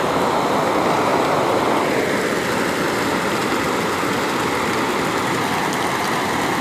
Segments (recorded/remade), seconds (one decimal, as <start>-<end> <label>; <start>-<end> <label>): 0.0-6.6 recorded